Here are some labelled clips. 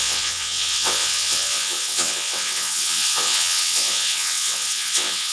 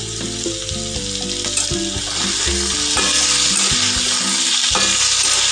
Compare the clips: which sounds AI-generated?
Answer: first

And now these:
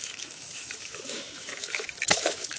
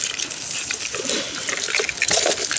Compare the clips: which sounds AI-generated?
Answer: first